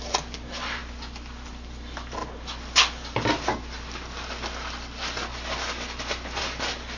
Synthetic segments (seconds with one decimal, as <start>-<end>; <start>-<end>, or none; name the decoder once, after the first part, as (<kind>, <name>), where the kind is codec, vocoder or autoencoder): none